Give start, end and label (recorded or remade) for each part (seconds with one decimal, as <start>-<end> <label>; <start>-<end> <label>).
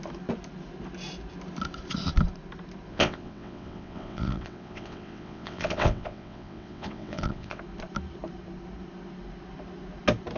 0.0-2.9 recorded; 2.9-7.6 remade; 7.6-10.4 recorded